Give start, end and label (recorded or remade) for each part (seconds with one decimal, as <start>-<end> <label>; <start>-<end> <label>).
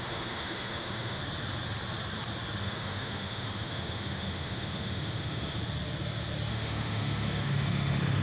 0.0-1.2 remade; 1.2-2.6 recorded; 2.6-5.6 remade; 5.6-6.5 recorded; 6.5-8.2 remade